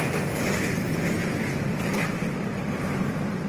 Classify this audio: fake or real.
real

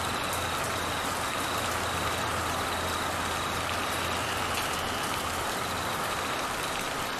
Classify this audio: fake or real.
real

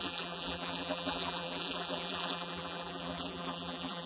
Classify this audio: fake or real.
fake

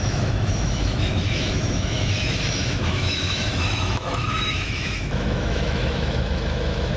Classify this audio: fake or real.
fake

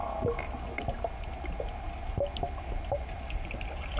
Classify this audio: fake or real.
real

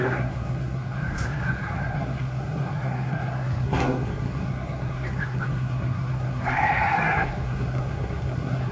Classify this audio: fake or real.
fake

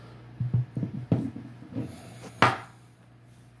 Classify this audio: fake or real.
real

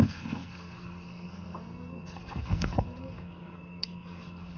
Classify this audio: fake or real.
fake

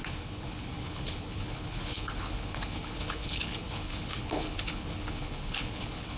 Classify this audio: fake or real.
fake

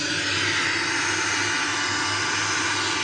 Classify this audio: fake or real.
real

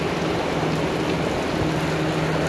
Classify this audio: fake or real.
real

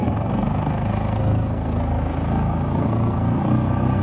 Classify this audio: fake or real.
fake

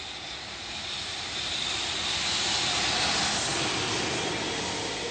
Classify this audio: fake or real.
real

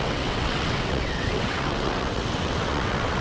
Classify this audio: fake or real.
fake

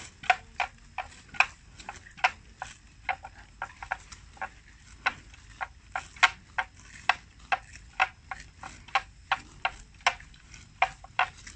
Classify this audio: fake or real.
real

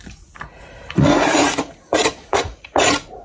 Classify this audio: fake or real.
fake